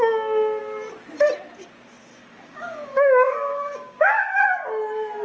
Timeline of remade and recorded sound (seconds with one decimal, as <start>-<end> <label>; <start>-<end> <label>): 0.0-2.1 recorded; 2.1-4.4 remade; 4.4-5.2 recorded